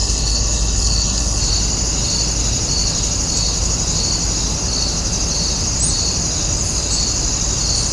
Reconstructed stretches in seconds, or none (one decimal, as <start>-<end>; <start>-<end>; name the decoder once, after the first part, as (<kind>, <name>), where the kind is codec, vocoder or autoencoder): 0.0-1.4 (codec, HILCodec)

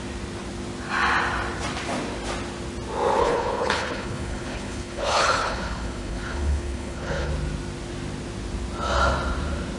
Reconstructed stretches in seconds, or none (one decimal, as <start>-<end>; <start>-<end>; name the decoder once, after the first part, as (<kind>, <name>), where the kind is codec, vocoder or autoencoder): 3.2-7.3 (codec, HILCodec)

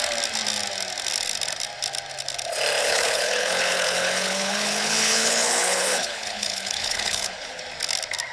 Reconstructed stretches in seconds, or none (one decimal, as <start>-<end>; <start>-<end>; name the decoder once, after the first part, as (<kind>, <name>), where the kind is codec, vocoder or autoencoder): 2.8-7.6 (codec, HILCodec)

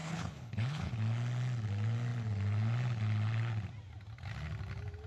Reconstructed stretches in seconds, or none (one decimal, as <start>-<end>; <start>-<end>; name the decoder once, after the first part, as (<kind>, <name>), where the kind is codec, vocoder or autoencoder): 0.0-0.9 (codec, HILCodec)

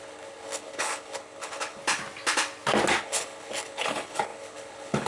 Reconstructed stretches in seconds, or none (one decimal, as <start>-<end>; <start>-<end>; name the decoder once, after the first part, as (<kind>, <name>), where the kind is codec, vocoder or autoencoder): 0.0-1.8 (codec, HILCodec); 3.0-5.1

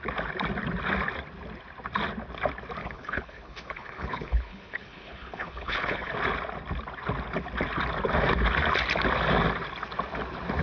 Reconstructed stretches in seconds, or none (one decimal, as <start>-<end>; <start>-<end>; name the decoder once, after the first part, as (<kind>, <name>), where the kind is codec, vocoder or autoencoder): 2.8-6.1 (codec, HILCodec)

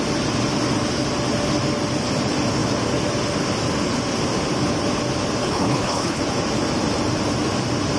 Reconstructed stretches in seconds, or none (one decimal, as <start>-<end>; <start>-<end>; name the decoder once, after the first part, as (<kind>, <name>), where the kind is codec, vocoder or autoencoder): 5.4-6.2 (codec, HILCodec)

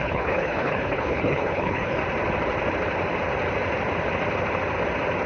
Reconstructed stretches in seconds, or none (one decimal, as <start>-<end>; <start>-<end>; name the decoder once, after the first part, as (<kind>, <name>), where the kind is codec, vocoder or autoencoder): 0.0-2.0 (codec, HILCodec)